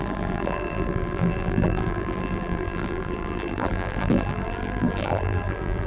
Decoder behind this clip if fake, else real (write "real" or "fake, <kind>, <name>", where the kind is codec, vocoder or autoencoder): fake, vocoder, BigVGAN v2